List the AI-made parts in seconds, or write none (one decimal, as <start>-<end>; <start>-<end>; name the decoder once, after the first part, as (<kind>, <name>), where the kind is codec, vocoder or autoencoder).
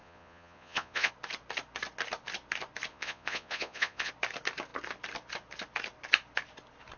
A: 0.0-1.1 (vocoder, Vocos); 2.9-4.1